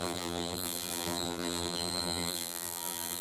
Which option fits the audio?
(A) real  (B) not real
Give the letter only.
B